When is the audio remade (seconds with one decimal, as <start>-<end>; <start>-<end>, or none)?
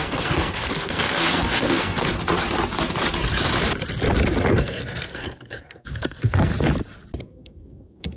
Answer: 0.0-2.1; 4.5-6.5; 7.2-8.2